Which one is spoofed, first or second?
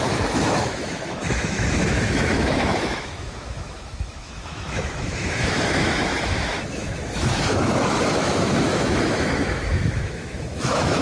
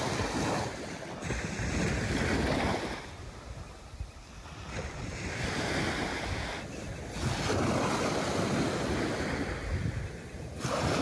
first